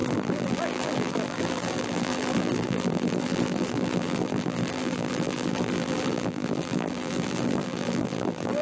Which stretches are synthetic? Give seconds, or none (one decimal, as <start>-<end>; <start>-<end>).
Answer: 0.0-8.6